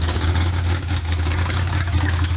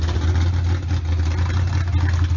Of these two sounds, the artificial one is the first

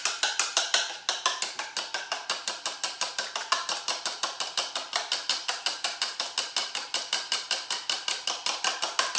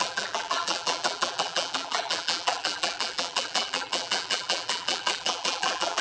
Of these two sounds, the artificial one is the second